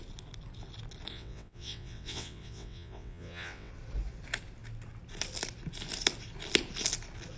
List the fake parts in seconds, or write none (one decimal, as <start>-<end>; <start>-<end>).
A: 1.1-3.7